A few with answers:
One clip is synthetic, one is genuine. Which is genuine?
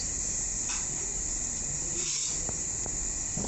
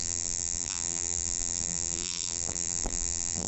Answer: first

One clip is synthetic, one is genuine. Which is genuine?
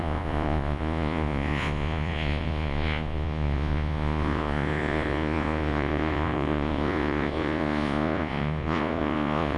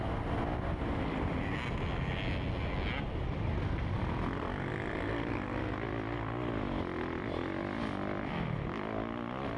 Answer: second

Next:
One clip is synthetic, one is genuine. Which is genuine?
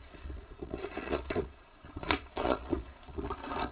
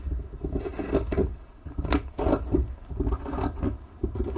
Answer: second